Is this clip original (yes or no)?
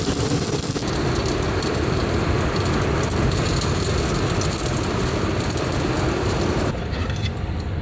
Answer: yes